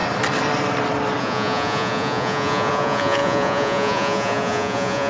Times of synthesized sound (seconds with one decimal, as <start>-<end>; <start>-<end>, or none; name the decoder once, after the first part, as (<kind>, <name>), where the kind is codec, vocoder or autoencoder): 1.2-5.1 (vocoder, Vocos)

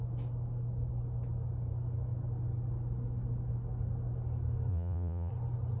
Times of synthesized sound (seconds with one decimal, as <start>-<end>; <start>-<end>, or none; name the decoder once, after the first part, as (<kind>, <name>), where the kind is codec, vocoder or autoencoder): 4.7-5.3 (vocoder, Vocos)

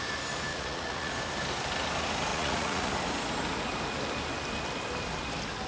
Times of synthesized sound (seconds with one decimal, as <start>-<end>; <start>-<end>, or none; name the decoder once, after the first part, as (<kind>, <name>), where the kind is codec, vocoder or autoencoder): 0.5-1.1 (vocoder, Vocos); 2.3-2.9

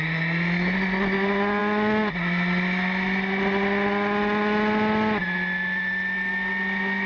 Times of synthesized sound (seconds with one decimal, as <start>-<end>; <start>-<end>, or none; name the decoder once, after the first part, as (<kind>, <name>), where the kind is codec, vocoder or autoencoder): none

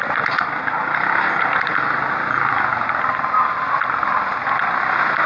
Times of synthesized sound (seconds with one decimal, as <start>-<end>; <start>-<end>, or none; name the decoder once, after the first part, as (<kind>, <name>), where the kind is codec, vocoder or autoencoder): none

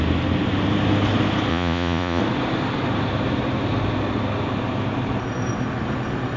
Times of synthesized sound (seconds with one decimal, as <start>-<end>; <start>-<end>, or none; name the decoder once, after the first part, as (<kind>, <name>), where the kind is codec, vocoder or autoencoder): 1.5-2.2 (vocoder, Vocos)

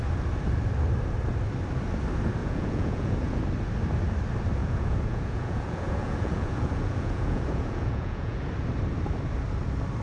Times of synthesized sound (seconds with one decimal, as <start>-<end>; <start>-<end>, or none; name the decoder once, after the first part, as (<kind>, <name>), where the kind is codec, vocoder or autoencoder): 2.4-3.4 (vocoder, Vocos); 4.6-8.4

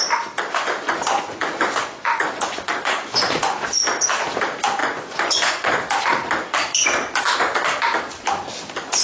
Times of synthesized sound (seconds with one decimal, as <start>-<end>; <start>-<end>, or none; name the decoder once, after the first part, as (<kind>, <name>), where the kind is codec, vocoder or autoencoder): 0.5-3.7 (vocoder, Vocos); 4.8-5.7